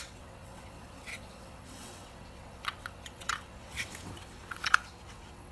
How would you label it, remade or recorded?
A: remade